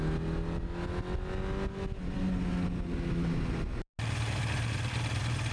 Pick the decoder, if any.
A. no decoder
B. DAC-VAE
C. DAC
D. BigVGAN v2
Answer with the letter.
A